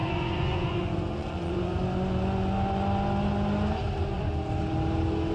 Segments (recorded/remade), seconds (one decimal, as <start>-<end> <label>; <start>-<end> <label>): 0.0-1.8 remade; 1.8-5.3 recorded